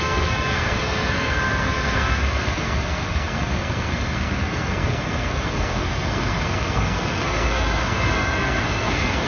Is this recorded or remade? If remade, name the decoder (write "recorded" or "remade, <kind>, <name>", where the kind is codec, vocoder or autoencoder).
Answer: remade, codec, SNAC